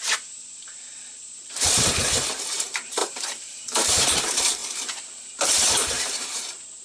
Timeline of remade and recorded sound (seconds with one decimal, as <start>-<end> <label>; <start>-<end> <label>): 0.0-6.8 remade